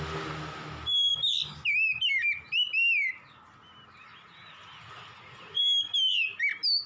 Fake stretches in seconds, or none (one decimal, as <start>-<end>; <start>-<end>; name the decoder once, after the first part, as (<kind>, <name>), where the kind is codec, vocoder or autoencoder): 4.0-5.6 (vocoder, Vocos)